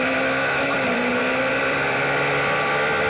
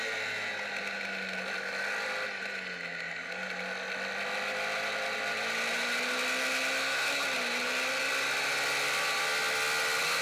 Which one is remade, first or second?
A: first